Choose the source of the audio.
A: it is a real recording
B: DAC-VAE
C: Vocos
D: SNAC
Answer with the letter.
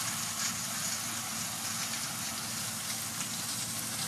A